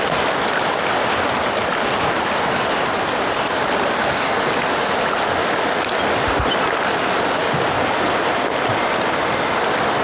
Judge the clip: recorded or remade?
recorded